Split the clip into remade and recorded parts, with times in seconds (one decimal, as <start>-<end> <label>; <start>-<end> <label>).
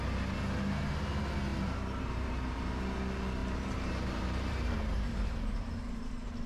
0.0-1.5 recorded; 1.5-2.7 remade; 2.7-3.4 recorded; 3.4-6.1 remade; 6.1-6.5 recorded